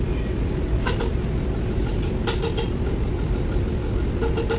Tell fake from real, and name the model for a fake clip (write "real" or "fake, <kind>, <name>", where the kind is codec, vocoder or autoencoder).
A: real